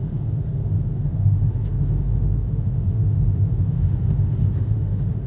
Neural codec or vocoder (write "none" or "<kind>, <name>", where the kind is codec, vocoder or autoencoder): autoencoder, DAC-VAE